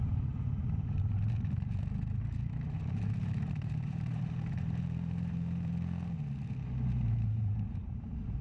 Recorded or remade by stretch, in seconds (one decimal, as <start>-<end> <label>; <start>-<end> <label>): 0.0-5.7 remade; 5.7-7.0 recorded; 7.0-8.4 remade